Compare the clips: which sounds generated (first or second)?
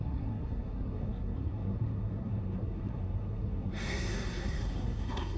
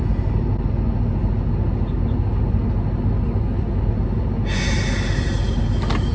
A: first